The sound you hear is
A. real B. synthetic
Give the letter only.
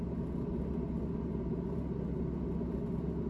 A